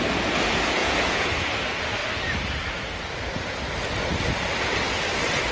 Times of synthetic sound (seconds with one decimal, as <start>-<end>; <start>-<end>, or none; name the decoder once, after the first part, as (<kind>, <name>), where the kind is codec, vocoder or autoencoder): 0.8-1.3 (vocoder, Vocos)